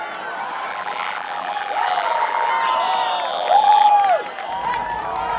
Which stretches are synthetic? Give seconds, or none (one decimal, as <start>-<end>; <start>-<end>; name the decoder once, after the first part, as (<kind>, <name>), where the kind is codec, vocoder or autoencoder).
0.7-2.5 (vocoder, BigVGAN v2); 3.3-3.9

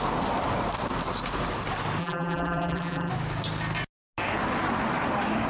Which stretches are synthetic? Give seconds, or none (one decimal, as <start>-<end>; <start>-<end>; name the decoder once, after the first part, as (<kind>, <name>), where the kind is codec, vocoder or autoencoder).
2.0-3.1 (vocoder, BigVGAN v2)

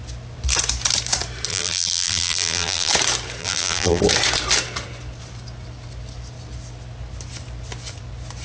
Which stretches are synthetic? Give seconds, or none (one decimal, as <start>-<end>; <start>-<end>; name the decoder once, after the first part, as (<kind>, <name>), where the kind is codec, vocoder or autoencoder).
1.5-2.9 (vocoder, BigVGAN v2); 3.4-4.0

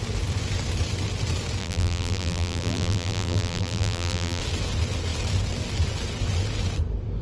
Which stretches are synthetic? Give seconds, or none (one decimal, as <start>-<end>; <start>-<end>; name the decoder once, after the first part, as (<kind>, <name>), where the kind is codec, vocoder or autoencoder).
1.6-4.4 (vocoder, BigVGAN v2)

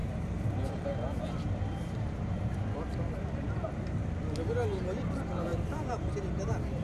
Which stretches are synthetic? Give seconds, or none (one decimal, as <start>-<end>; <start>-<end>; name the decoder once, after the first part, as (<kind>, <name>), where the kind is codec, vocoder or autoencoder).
0.0-3.7 (vocoder, BigVGAN v2); 5.5-6.1

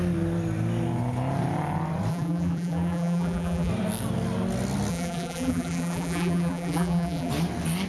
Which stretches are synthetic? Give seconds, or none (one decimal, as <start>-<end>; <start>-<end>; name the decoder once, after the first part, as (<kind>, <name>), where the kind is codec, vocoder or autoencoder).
2.1-3.7 (vocoder, BigVGAN v2); 4.9-7.3

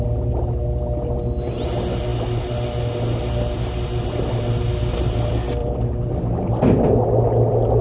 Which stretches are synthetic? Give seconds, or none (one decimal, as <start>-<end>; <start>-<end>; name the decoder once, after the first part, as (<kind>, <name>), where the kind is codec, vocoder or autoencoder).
5.6-6.5 (vocoder, BigVGAN v2)

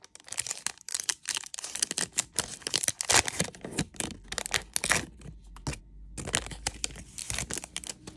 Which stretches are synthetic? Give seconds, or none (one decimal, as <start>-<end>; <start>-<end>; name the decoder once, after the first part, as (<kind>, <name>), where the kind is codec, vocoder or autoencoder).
none